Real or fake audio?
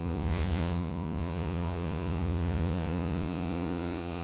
fake